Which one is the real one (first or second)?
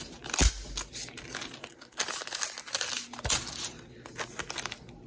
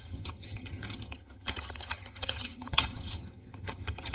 first